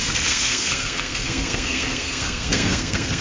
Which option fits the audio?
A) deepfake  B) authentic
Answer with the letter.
A